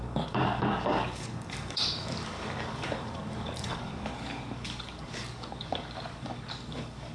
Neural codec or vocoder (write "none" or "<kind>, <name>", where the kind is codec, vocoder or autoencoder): codec, DAC